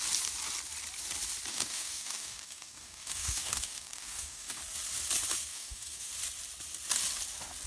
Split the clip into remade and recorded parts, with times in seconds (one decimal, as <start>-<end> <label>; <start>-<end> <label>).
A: 0.0-1.5 recorded; 1.5-4.6 remade; 4.6-5.5 recorded; 5.5-6.1 remade; 6.1-7.7 recorded